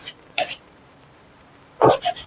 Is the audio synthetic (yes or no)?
yes